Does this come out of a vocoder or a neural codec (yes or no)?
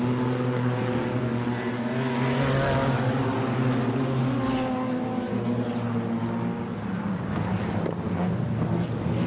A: no